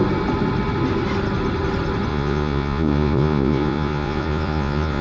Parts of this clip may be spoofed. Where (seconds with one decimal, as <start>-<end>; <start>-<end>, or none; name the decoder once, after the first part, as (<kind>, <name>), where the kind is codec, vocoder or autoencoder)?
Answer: 2.1-5.0 (vocoder, Vocos)